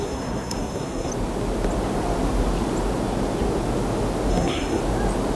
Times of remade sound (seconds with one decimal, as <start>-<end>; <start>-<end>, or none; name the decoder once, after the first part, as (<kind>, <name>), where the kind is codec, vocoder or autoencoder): 0.0-1.1 (codec, SNAC); 4.3-4.8